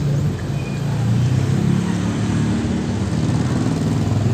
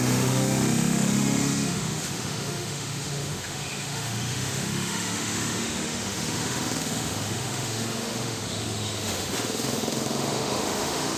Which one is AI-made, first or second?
second